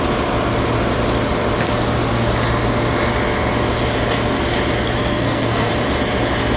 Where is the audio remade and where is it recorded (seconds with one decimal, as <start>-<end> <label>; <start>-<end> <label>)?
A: 0.0-5.0 recorded; 5.0-5.7 remade; 5.7-6.6 recorded